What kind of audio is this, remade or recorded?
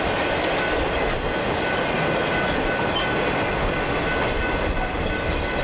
recorded